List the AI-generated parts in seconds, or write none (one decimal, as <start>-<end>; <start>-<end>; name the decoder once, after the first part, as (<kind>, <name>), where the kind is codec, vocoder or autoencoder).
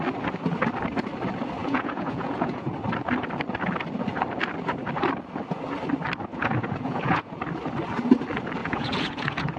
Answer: 1.6-2.7 (vocoder, Vocos); 6.3-7.4; 8.6-9.6